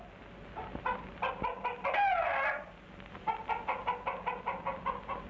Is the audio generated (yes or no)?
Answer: no